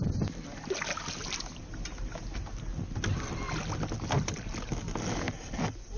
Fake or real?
real